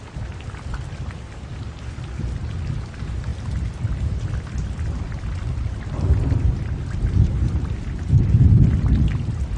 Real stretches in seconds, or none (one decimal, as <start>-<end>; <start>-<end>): 0.0-3.3; 4.3-9.6